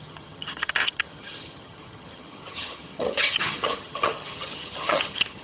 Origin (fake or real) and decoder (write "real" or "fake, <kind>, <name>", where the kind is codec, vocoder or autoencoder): fake, vocoder, HiFi-GAN